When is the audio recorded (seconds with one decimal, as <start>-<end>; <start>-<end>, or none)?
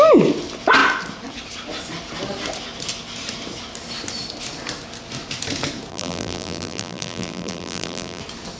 0.0-5.9; 8.2-8.6